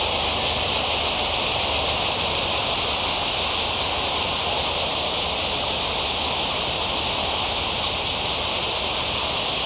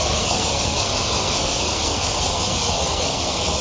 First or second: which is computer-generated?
second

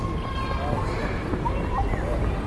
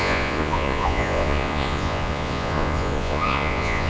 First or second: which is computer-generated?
second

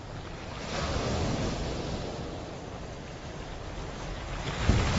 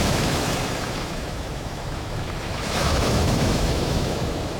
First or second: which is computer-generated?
second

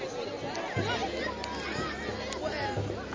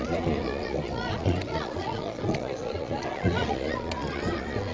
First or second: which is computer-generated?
second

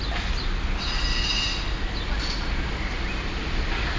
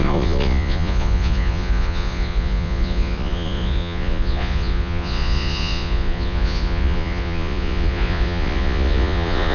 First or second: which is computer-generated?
second